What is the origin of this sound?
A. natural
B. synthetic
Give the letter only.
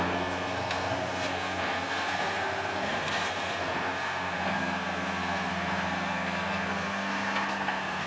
B